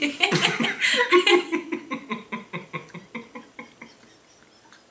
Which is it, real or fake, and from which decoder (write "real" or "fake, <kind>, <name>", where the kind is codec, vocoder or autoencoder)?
real